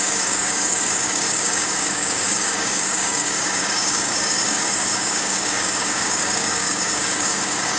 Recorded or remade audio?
remade